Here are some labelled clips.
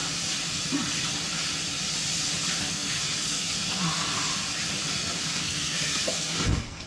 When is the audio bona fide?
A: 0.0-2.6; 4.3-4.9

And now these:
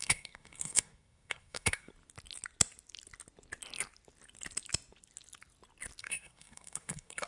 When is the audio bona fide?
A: 1.9-6.0